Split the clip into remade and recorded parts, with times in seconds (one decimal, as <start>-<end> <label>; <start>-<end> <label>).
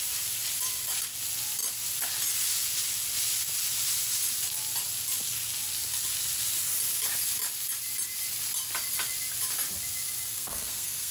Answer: 0.0-10.3 recorded; 10.3-11.1 remade